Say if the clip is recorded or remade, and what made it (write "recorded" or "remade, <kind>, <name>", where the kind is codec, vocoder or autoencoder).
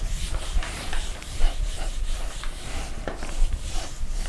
remade, vocoder, BigVGAN v2